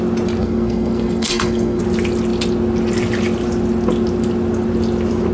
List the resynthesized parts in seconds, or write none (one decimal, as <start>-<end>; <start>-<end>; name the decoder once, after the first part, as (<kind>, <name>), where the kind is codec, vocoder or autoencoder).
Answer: 0.4-1.8 (codec, SNAC)